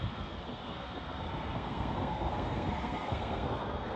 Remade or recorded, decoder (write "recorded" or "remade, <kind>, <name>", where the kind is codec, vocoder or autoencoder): remade, codec, SNAC